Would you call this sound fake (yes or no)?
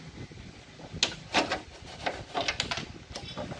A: no